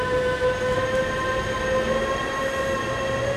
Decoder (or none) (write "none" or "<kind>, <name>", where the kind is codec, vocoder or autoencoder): none